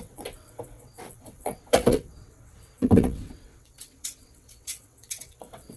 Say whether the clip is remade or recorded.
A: remade